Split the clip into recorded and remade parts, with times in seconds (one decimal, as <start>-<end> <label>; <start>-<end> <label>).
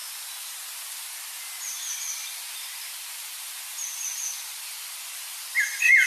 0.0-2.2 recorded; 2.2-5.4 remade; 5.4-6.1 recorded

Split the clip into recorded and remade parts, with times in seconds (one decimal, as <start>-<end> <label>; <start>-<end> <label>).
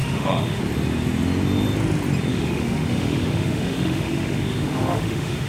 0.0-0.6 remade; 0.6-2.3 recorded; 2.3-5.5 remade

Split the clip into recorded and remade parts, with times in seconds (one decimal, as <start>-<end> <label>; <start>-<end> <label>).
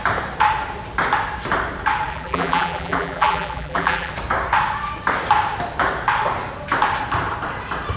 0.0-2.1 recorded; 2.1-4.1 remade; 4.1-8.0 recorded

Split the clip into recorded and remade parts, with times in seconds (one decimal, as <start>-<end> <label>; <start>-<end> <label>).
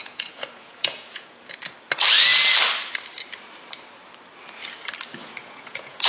0.0-1.6 remade; 1.6-5.2 recorded; 5.2-6.1 remade